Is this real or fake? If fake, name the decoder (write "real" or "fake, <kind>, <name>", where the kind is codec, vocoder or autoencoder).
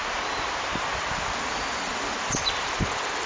real